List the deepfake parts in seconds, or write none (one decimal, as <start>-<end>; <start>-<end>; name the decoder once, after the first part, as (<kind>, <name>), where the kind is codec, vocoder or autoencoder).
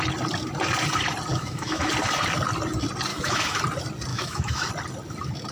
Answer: 1.3-1.9 (autoencoder, DAC-VAE); 3.1-3.6; 4.1-4.7